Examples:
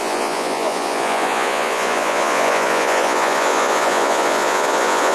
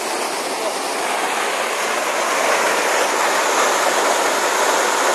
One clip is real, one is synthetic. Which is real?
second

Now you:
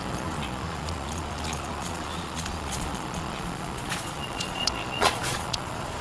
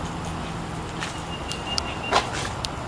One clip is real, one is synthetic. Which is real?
second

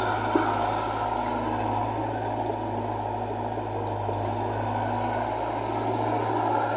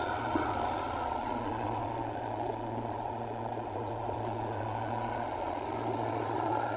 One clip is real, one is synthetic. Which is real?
first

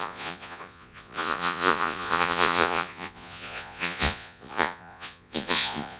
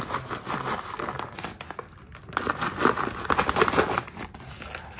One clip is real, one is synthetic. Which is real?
second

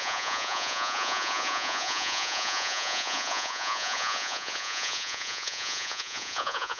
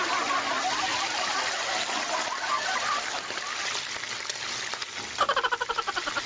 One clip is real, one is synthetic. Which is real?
second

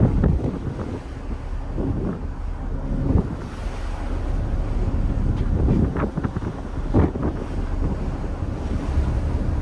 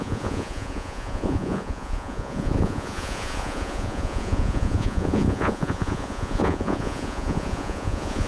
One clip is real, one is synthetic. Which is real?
first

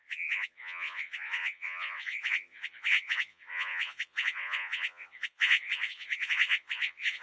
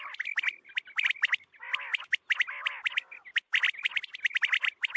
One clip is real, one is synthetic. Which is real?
second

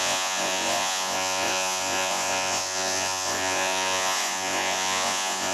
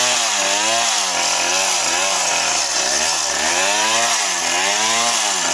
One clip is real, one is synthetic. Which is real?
second